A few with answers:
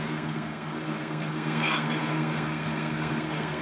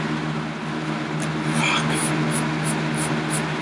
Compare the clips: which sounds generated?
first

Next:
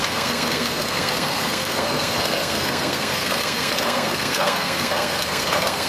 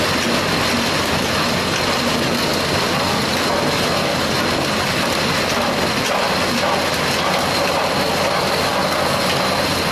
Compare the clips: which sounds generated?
first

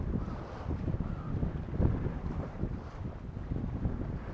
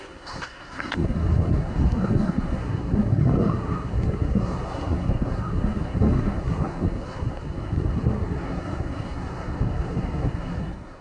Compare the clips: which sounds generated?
second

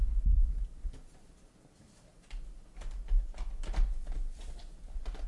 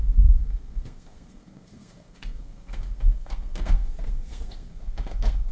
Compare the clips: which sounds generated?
second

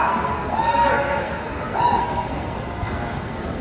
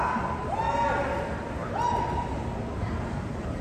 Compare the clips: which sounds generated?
first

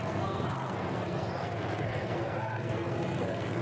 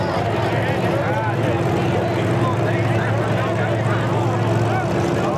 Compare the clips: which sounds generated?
first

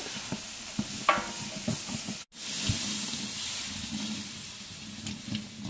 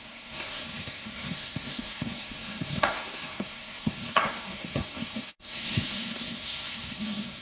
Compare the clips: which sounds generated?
second